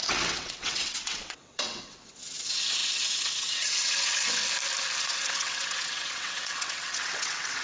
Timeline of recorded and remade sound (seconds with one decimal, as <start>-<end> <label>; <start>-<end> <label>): 0.0-4.4 remade; 4.4-5.0 recorded; 5.0-7.6 remade